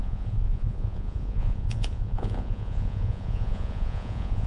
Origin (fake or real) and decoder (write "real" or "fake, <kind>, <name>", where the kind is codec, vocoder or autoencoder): fake, vocoder, Vocos